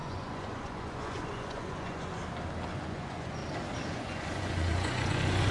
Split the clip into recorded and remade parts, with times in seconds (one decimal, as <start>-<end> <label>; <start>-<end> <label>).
0.0-2.2 remade; 2.2-2.7 recorded; 2.7-3.4 remade; 3.4-3.9 recorded; 3.9-5.5 remade